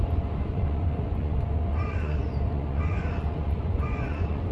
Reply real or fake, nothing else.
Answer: fake